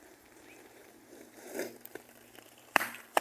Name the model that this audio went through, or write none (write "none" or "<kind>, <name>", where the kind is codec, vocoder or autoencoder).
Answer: vocoder, BigVGAN v2